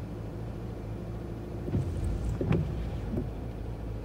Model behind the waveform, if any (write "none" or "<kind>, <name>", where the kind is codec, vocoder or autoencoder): vocoder, BigVGAN v2